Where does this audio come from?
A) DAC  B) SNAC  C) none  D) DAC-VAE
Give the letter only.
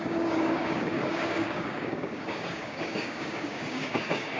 A